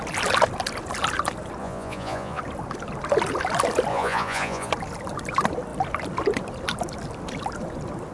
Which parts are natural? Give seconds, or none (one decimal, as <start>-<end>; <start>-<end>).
0.0-1.6; 2.4-3.9; 4.7-8.1